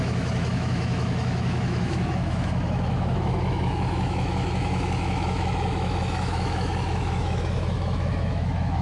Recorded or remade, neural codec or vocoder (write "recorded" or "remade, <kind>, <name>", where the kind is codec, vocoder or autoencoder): remade, autoencoder, DAC-VAE